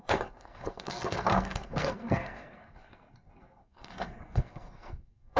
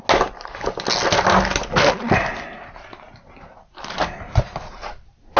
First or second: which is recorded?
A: second